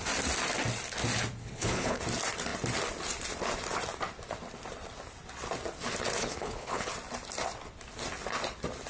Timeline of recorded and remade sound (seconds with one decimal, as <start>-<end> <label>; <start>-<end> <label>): 0.0-1.4 recorded; 1.4-2.0 remade; 2.0-6.2 recorded; 6.2-6.9 remade; 6.9-8.9 recorded